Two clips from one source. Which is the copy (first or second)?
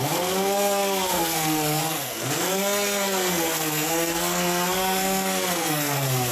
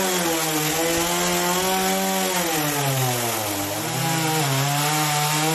first